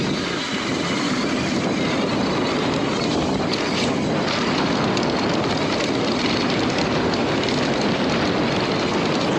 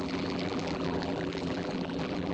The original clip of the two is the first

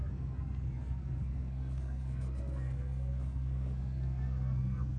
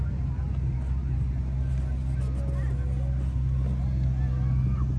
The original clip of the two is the second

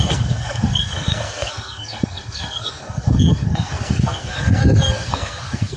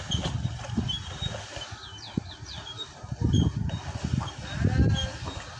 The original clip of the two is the second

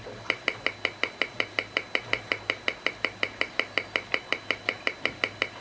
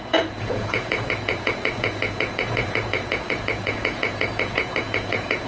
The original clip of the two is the first